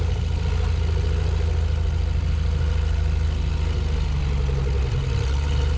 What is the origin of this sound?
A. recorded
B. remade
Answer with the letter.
A